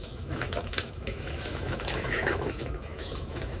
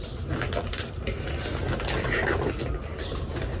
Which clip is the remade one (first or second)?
first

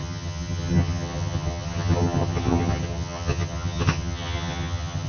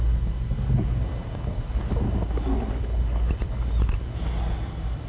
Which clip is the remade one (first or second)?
first